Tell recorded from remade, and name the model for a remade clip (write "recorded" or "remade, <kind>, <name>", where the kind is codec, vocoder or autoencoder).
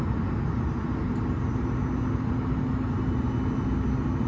recorded